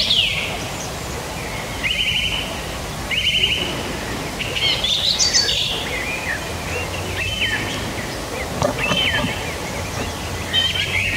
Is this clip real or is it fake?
real